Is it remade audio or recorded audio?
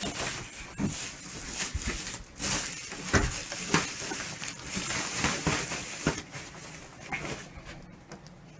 recorded